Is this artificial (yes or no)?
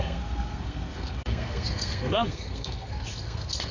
yes